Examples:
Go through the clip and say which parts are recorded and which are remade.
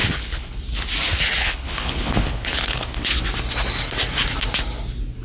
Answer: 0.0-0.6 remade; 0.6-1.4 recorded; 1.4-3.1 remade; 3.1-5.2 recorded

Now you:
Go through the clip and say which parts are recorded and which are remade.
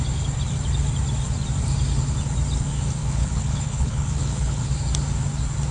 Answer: 0.0-3.0 recorded; 3.0-4.7 remade; 4.7-5.7 recorded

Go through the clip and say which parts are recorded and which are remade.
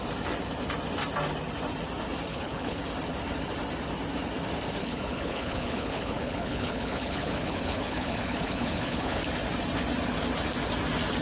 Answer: 0.0-2.3 recorded; 2.3-2.8 remade; 2.8-4.8 recorded; 4.8-9.2 remade; 9.2-11.2 recorded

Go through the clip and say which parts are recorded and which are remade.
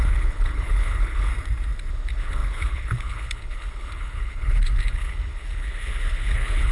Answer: 0.0-1.3 remade; 1.3-1.9 recorded; 1.9-6.7 remade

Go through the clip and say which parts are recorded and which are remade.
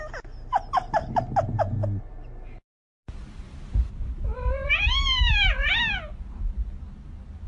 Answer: 0.0-7.5 recorded